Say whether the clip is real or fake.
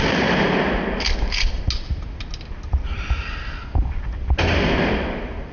real